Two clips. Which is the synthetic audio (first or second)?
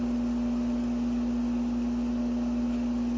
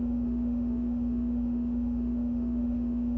second